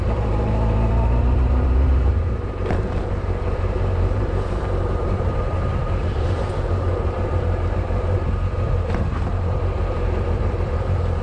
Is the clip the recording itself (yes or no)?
no